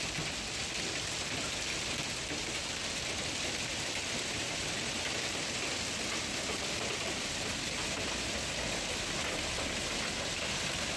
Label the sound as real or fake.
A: real